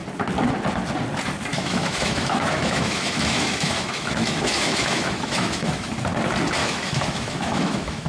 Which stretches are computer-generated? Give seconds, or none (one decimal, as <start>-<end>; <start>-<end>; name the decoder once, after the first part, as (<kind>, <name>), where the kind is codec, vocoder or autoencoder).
1.5-5.9 (autoencoder, DAC-VAE); 6.6-8.1